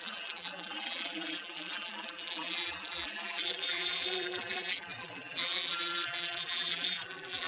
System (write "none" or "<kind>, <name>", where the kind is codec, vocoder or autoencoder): vocoder, BigVGAN v2